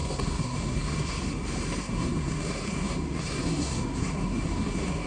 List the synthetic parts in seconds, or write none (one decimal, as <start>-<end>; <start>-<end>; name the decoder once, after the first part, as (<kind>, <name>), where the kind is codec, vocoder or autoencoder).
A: 0.0-1.2 (codec, SNAC); 1.8-5.1